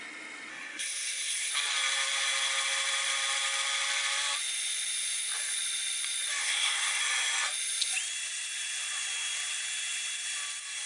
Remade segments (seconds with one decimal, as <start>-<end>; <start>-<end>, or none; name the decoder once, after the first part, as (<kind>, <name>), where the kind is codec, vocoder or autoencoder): 0.5-1.5 (codec, SNAC); 6.4-7.0